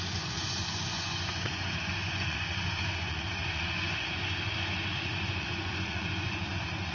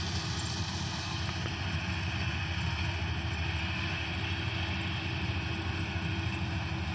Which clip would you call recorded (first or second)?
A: second